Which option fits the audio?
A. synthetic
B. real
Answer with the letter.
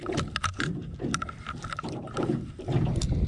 B